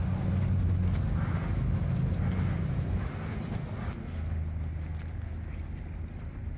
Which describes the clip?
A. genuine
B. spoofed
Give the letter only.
A